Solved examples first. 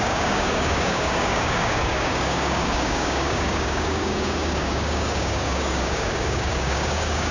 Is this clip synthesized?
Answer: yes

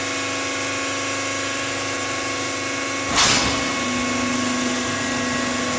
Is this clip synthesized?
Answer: no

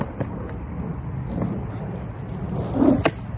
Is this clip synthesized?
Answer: no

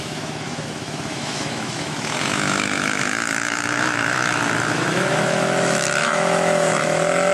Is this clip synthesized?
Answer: yes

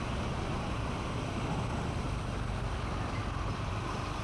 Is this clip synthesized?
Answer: no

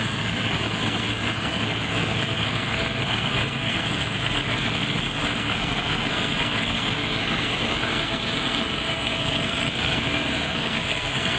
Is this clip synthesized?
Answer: yes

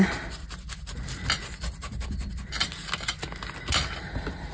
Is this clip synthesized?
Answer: no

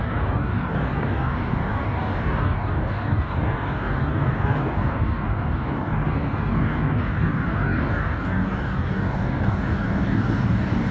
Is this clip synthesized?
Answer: yes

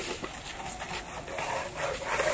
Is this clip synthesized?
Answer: no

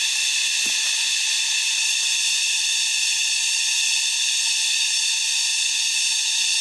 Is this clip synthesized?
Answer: no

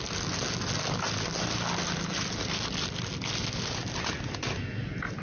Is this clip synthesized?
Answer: no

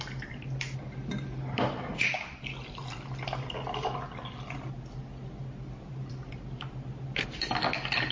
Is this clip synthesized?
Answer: no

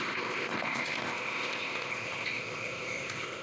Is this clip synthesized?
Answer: yes